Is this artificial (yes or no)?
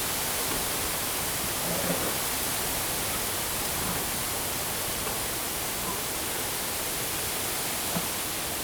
no